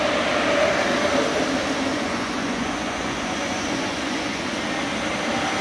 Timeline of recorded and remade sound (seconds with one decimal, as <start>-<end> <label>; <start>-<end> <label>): 0.0-1.9 recorded; 1.9-4.6 remade; 4.6-5.6 recorded